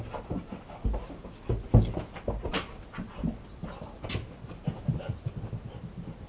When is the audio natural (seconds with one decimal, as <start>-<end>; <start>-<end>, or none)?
0.0-6.3